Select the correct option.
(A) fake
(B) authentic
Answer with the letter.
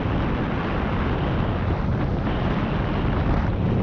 B